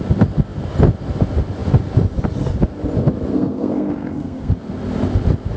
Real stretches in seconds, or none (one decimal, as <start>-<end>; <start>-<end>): 0.0-3.3; 4.5-5.6